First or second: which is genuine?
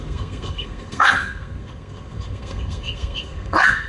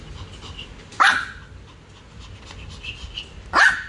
second